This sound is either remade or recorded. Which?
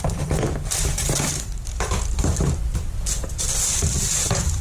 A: remade